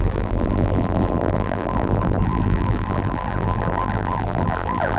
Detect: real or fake fake